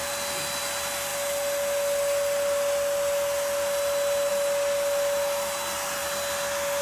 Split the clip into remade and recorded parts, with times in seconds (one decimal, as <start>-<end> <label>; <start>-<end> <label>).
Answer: 0.0-6.8 recorded